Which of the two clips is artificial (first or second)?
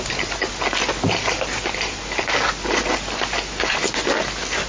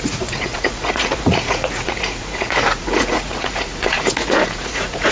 second